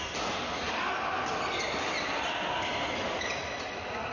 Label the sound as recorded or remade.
recorded